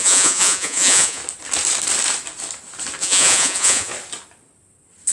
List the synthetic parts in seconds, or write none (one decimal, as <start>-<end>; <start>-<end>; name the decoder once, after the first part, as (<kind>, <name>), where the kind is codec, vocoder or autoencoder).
0.0-1.2 (vocoder, Vocos); 3.0-3.9